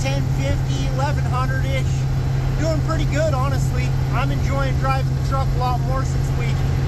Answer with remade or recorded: recorded